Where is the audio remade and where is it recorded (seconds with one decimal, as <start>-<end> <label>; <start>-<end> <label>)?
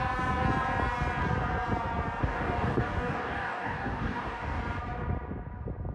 0.0-2.2 recorded; 2.2-4.6 remade; 4.6-5.9 recorded